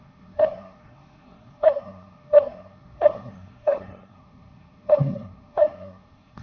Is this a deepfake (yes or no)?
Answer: yes